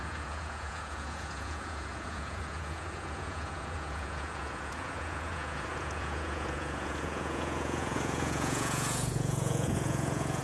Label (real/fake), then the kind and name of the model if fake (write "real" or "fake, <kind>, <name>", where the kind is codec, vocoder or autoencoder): fake, vocoder, Vocos